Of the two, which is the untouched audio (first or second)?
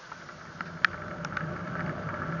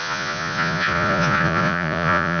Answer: first